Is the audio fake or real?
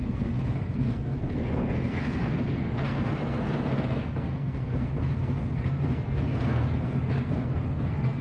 fake